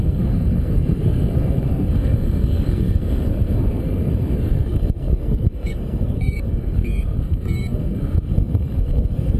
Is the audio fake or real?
fake